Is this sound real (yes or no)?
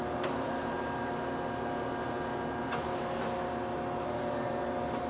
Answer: yes